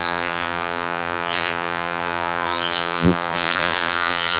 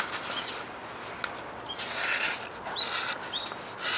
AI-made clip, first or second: first